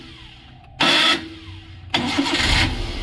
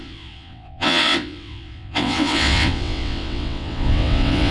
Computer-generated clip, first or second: second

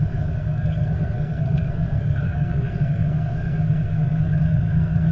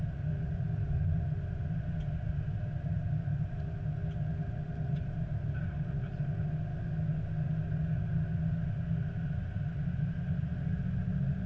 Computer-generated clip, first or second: first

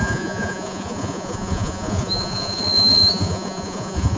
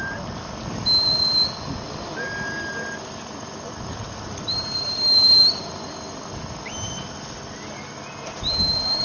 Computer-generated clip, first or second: first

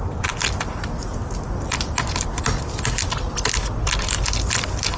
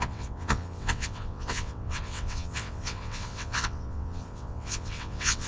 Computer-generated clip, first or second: second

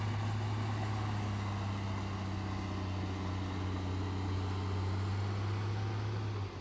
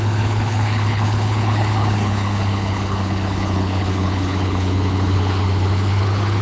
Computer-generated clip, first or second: second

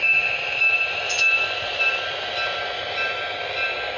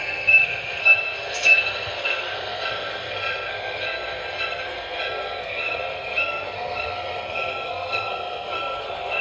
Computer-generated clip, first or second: second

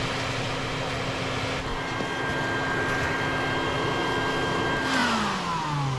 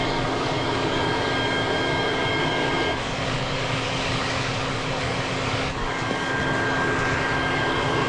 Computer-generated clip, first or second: second